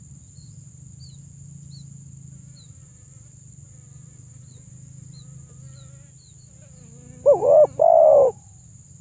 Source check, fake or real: real